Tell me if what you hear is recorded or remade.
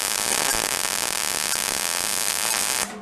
recorded